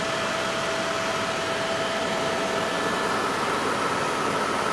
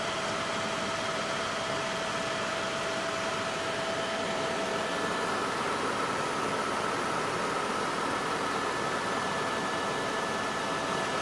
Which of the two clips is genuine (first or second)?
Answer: first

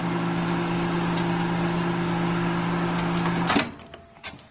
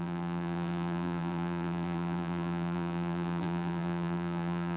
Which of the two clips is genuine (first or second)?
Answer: first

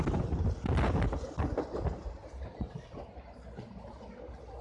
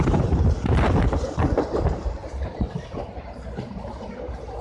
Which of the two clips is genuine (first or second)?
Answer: first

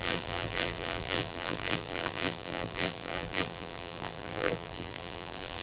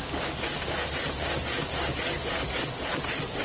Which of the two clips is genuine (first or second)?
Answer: second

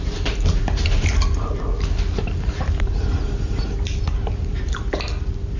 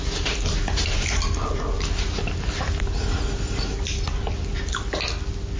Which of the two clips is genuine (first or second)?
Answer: second